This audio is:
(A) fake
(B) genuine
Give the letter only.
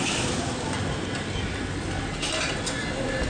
B